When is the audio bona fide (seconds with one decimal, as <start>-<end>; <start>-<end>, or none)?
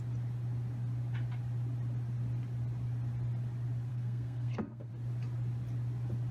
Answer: 0.0-3.9; 4.9-6.3